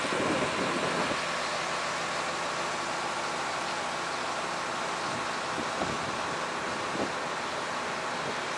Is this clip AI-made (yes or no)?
no